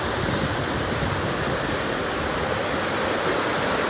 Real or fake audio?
real